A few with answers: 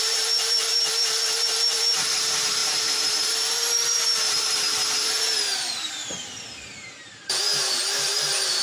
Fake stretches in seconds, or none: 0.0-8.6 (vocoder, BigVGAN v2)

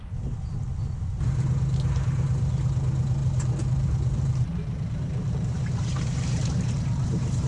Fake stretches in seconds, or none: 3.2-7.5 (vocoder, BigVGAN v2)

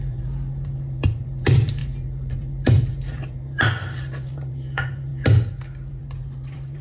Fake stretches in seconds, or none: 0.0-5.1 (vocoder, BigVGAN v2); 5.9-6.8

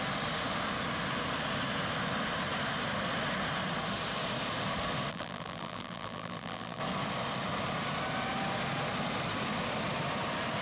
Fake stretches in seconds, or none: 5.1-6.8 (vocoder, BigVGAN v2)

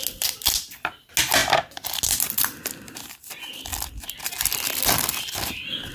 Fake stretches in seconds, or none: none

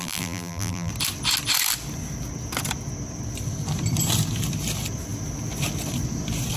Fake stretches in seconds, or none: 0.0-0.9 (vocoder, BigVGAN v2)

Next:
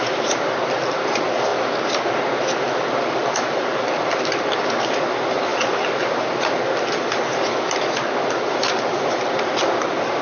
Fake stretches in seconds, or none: 0.0-1.5 (vocoder, BigVGAN v2); 2.7-5.5; 9.3-10.2

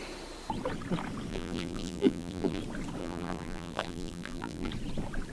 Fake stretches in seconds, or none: 1.3-2.6 (vocoder, BigVGAN v2); 3.0-4.7